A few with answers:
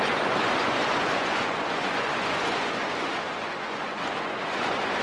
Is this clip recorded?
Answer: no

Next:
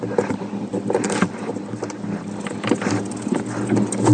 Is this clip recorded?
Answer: yes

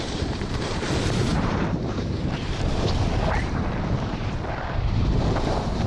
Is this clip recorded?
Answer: no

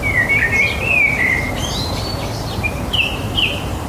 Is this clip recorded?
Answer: no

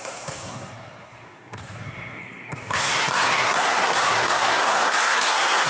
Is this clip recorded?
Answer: no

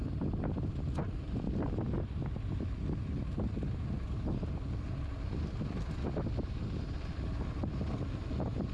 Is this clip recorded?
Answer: yes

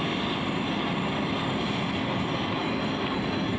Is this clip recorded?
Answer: yes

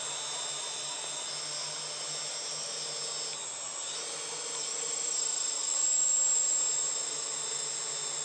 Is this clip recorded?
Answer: yes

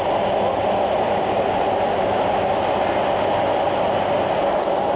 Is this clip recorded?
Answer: yes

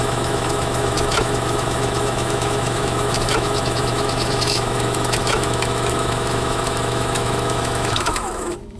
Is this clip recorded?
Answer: no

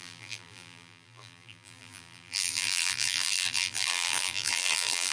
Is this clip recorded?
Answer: no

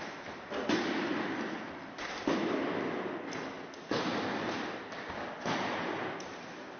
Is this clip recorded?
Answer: yes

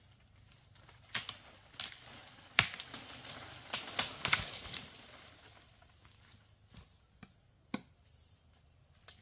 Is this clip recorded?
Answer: yes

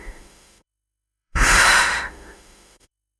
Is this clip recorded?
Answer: no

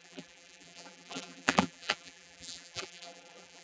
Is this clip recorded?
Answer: no